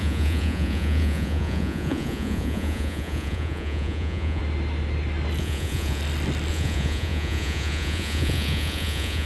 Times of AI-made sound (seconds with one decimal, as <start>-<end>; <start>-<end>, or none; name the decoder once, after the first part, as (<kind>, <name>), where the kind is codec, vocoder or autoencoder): 0.0-4.4 (vocoder, Vocos); 5.4-6.0; 6.5-9.3